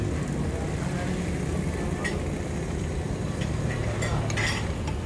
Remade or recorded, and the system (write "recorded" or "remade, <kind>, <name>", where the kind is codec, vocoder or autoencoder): recorded